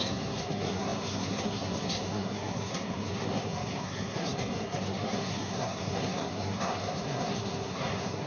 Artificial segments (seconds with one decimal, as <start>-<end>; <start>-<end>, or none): 0.0-8.3